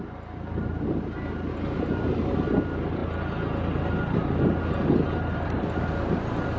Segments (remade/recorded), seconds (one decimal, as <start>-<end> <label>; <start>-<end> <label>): 0.0-6.6 recorded